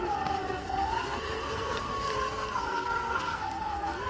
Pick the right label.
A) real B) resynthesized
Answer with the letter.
B